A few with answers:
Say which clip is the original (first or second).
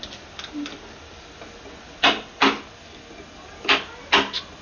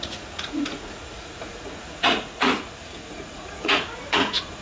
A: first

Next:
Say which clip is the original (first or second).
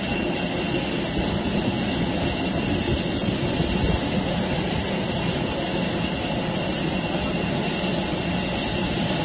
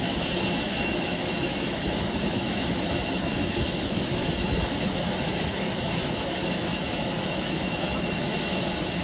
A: first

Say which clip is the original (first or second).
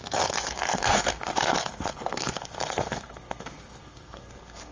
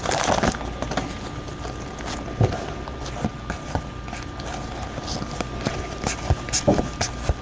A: second